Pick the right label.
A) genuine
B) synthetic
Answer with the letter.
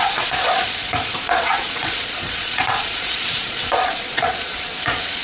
B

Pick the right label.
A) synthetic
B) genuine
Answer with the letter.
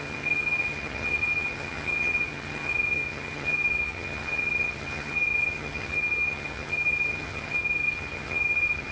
A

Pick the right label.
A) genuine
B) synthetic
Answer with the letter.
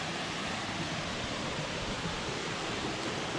A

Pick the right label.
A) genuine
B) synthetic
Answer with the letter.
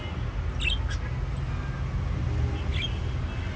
A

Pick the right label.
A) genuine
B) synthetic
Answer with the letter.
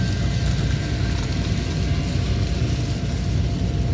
A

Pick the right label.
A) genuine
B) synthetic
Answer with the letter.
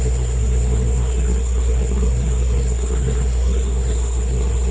B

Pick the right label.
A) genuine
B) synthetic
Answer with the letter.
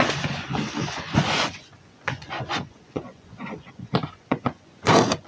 B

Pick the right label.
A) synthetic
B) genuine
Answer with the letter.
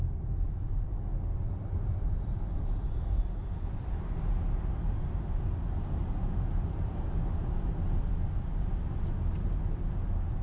B